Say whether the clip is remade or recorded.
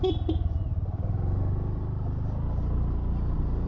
recorded